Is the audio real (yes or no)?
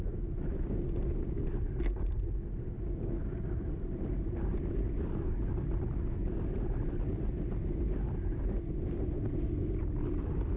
yes